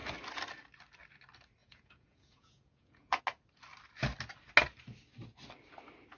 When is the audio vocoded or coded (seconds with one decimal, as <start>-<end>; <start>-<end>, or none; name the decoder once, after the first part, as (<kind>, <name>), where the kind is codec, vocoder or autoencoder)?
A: 1.6-3.2 (vocoder, Vocos)